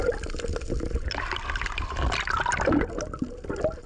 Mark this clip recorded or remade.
recorded